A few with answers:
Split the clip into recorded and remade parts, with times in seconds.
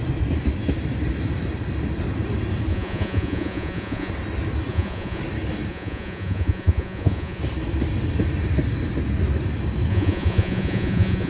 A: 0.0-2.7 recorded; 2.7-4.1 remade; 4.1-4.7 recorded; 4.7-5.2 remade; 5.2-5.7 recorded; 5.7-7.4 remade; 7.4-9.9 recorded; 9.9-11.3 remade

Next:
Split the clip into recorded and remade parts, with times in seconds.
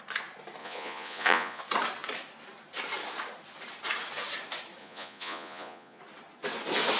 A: 0.0-0.6 recorded; 0.6-1.6 remade; 1.6-4.8 recorded; 4.8-6.0 remade; 6.0-7.0 recorded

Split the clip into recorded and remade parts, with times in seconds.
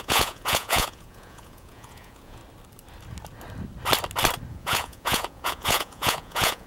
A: 0.0-2.4 remade; 2.4-4.5 recorded; 4.5-6.7 remade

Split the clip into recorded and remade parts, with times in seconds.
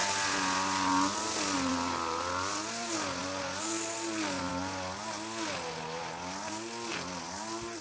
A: 0.0-7.8 recorded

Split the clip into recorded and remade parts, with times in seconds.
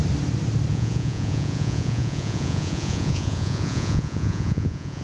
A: 0.0-0.7 recorded; 0.7-5.0 remade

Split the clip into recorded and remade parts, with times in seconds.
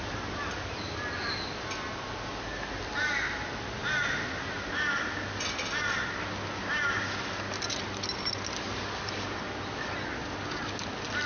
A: 0.0-11.3 recorded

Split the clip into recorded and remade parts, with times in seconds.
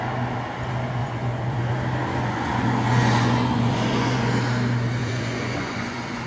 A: 0.0-1.0 recorded; 1.0-1.7 remade; 1.7-2.1 recorded; 2.1-4.3 remade; 4.3-5.0 recorded; 5.0-6.3 remade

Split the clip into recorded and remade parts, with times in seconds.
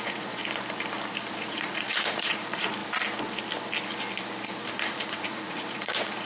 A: 0.0-0.4 remade; 0.4-1.4 recorded; 1.4-2.8 remade; 2.8-4.8 recorded; 4.8-6.3 remade